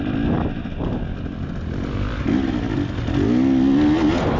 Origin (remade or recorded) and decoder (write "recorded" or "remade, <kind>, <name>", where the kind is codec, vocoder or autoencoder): recorded